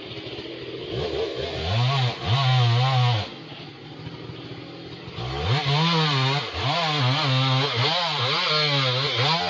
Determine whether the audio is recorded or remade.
recorded